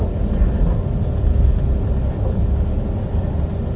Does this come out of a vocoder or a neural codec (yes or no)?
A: no